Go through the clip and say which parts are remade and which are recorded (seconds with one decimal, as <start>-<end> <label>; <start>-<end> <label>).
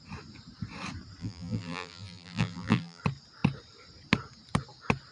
0.0-1.2 recorded; 1.2-3.0 remade; 3.0-5.1 recorded